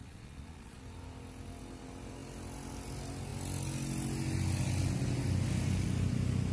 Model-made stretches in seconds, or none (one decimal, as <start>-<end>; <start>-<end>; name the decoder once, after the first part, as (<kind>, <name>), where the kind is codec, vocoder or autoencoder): 0.0-0.8 (vocoder, Vocos)